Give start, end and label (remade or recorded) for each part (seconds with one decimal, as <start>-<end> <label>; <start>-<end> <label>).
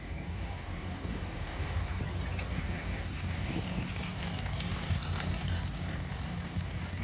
0.0-2.0 remade; 2.0-2.5 recorded; 2.5-7.0 remade